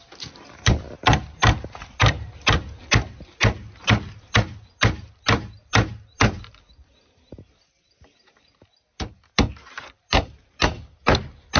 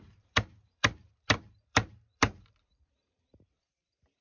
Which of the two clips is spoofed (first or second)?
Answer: second